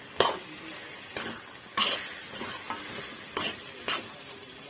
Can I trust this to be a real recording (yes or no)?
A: yes